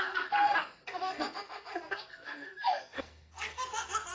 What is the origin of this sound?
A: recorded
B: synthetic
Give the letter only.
B